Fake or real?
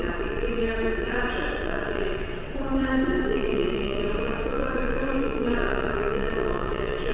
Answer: fake